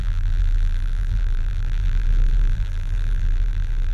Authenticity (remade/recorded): remade